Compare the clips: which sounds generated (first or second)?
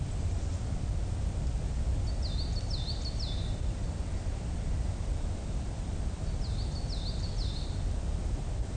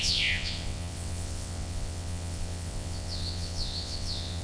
second